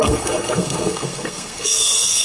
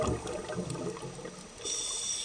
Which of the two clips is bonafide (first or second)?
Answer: second